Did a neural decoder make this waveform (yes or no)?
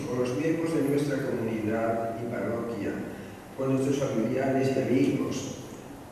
no